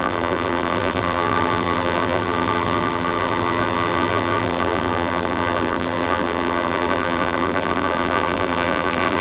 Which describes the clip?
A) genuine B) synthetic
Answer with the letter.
B